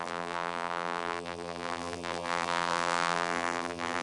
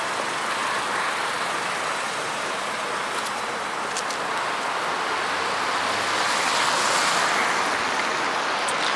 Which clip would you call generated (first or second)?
first